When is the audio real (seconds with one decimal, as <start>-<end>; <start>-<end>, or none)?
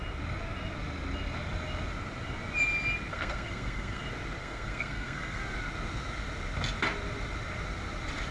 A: 0.0-3.1; 4.0-4.4; 5.4-8.3